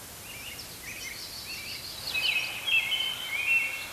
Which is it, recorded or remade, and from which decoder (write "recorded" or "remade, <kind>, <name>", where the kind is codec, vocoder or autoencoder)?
recorded